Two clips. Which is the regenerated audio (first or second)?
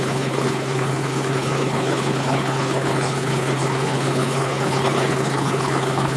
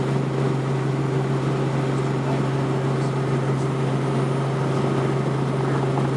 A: first